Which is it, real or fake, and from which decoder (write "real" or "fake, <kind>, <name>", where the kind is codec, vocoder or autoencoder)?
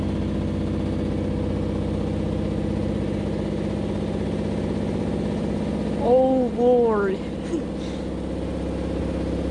real